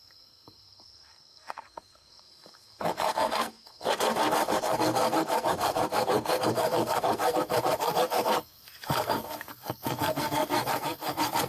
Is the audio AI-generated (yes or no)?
yes